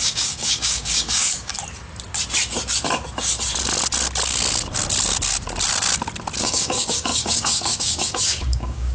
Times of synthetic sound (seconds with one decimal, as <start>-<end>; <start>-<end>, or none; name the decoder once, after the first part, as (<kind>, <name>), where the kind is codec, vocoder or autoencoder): 0.0-1.5 (codec, DAC); 6.4-8.9